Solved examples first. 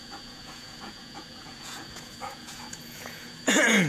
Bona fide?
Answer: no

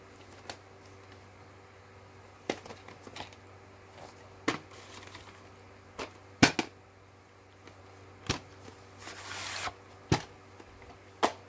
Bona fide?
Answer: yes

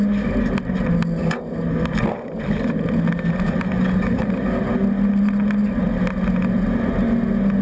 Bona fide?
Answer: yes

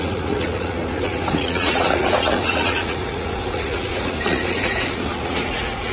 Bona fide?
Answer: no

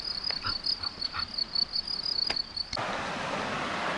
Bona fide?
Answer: yes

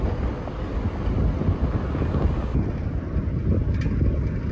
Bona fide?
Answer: yes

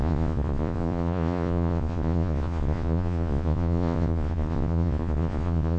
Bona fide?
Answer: no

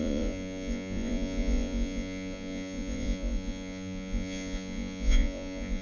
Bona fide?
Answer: no